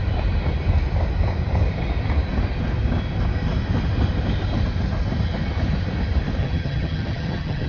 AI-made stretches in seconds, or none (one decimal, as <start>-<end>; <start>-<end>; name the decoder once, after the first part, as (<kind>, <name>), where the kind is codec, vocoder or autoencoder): 6.4-7.7 (vocoder, HiFi-GAN)